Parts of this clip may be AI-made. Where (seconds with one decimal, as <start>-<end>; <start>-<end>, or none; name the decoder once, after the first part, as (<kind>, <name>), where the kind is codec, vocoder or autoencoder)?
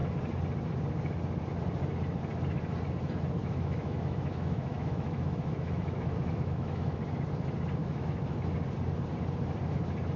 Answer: 3.4-7.0 (autoencoder, DAC-VAE); 7.8-8.4